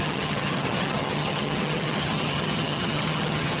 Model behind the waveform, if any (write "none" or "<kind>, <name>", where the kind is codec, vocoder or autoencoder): vocoder, HiFi-GAN